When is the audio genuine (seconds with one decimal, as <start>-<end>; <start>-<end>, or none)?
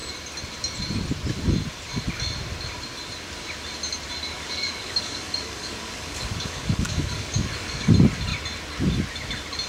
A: 0.0-4.3; 7.9-9.7